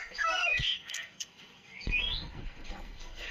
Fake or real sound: fake